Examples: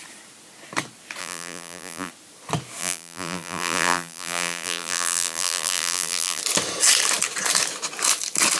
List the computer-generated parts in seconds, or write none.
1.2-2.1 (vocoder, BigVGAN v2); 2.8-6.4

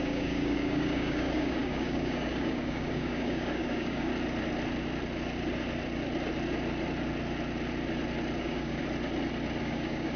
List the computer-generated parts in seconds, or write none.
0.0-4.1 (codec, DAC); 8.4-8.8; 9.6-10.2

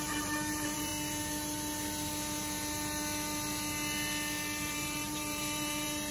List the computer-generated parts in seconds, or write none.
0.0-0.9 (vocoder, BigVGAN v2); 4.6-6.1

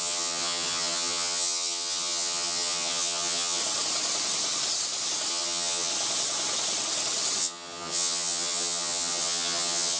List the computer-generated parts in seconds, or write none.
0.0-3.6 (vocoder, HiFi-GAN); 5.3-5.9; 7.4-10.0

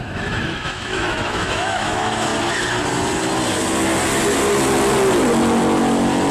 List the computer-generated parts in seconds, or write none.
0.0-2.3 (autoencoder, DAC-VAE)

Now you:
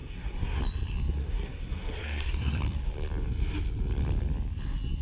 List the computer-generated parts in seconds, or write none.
0.0-0.6 (codec, SNAC); 1.2-2.6

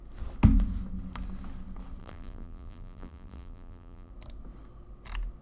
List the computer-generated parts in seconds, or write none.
2.0-4.1 (vocoder, BigVGAN v2)